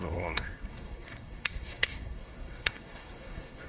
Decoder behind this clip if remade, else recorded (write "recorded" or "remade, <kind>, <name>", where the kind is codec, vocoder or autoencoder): remade, codec, SNAC